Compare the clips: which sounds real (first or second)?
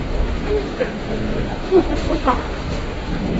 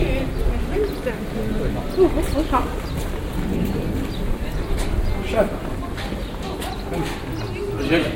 second